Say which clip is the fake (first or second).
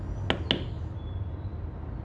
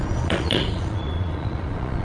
second